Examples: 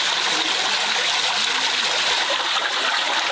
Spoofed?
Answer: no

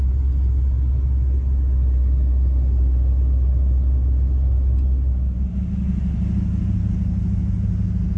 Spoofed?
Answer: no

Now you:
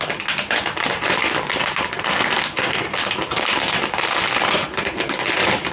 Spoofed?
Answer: no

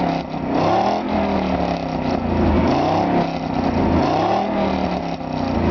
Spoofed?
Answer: no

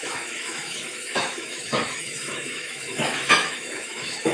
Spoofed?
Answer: yes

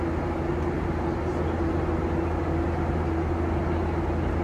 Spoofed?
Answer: no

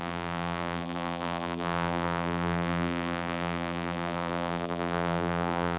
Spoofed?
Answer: yes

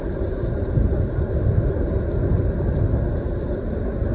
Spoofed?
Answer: no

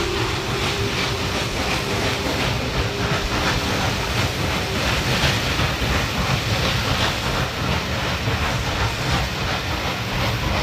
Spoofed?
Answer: no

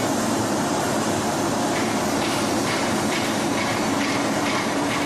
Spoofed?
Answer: yes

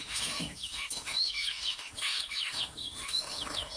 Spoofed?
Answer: yes